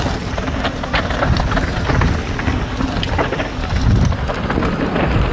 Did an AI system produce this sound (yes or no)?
no